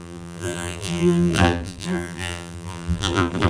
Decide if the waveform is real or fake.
fake